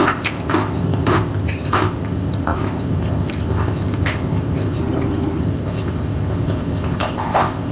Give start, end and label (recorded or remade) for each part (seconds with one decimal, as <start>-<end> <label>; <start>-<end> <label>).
0.0-4.8 remade; 4.8-5.4 recorded; 5.4-7.7 remade